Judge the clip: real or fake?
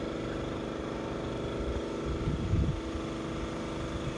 real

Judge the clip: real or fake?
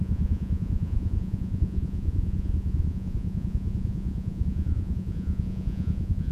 fake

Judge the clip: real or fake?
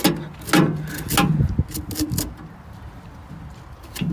real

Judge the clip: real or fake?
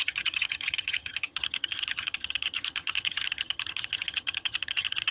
fake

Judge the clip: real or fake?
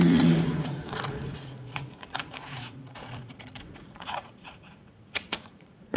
fake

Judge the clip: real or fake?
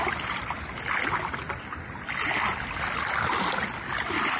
real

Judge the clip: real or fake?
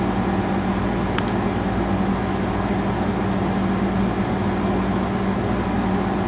real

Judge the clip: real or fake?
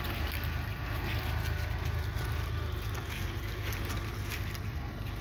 real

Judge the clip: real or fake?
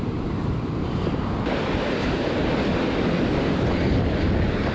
real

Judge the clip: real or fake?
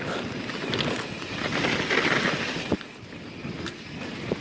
real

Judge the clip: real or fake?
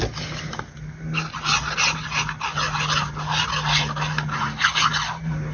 real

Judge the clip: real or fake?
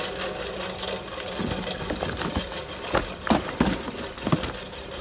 real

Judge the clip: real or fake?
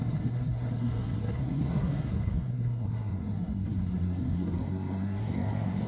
fake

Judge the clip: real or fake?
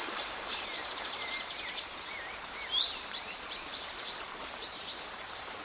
fake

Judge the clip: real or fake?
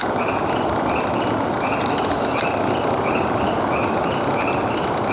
real